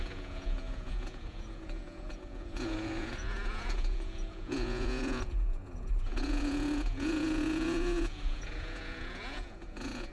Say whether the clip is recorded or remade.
remade